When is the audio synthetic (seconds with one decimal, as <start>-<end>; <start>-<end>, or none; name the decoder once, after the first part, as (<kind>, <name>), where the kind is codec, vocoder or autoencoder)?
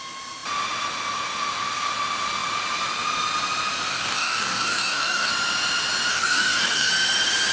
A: 3.9-5.3 (codec, DAC); 6.1-6.9